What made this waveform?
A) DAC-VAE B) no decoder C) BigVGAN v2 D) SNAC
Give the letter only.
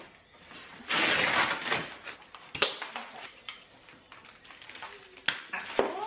B